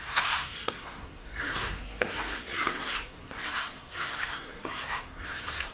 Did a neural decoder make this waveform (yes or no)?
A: yes